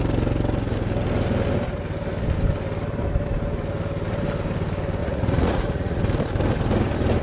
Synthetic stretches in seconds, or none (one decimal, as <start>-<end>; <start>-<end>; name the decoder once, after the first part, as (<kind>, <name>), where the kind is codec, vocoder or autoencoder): 5.0-6.0 (vocoder, Vocos)